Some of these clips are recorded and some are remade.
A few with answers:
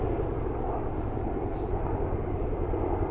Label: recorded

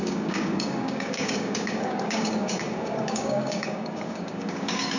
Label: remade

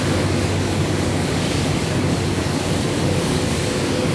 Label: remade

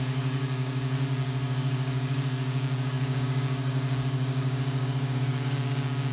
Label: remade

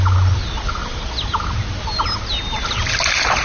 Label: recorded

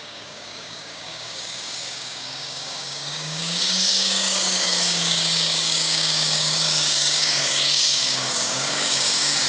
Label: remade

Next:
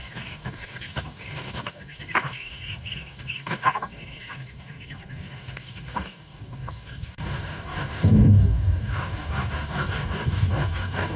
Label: remade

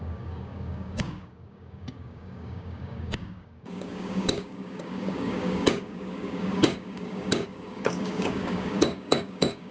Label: remade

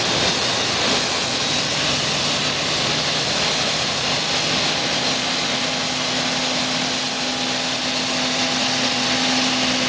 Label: recorded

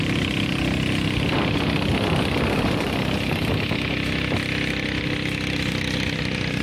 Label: recorded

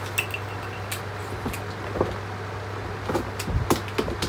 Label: recorded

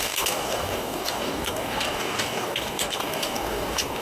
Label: remade